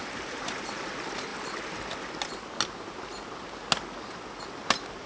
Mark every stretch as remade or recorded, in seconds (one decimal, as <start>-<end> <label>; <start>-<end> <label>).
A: 0.0-0.9 remade; 0.9-5.1 recorded